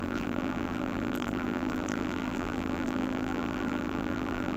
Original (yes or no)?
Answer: no